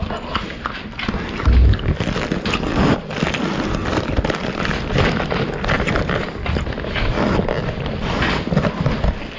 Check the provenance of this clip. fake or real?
real